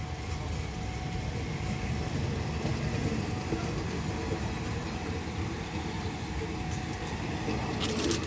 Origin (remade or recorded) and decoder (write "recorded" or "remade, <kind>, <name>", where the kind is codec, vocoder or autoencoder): recorded